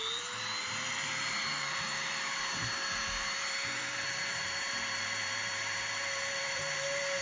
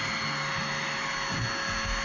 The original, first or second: second